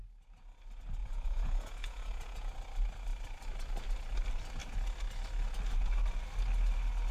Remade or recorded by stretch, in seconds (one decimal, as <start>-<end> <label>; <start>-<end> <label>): 0.0-1.0 recorded; 1.0-2.5 remade; 2.5-7.1 recorded